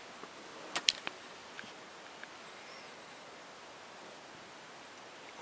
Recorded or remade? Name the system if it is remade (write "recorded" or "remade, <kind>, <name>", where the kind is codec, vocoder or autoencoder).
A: recorded